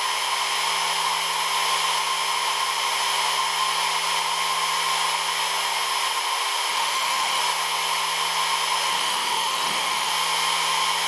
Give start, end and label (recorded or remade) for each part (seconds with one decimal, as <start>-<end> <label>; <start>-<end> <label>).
0.0-6.7 recorded; 6.7-7.4 remade; 7.4-8.9 recorded; 8.9-10.1 remade; 10.1-11.1 recorded